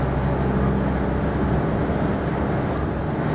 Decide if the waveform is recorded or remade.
recorded